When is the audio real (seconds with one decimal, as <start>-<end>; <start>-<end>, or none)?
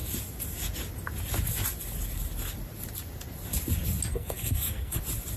0.0-4.1; 5.0-5.4